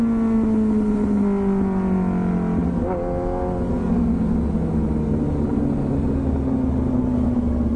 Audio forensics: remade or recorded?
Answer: recorded